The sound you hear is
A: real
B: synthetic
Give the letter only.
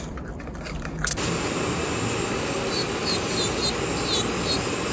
B